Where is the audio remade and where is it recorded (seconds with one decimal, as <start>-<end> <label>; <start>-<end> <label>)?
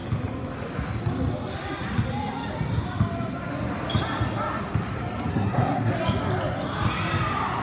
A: 0.0-5.3 recorded; 5.3-5.9 remade; 5.9-7.6 recorded